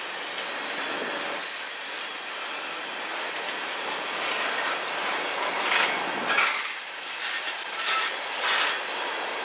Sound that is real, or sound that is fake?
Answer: real